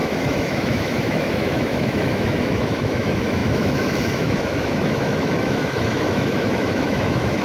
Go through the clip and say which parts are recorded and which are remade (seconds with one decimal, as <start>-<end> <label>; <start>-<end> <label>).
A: 0.0-7.4 remade